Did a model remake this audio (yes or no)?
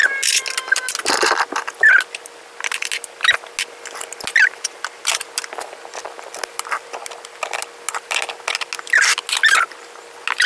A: no